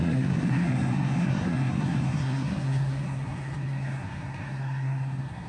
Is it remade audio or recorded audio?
remade